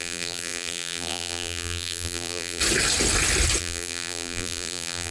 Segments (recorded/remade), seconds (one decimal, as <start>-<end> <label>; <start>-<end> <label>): 0.0-2.6 remade; 2.6-3.6 recorded; 3.6-5.1 remade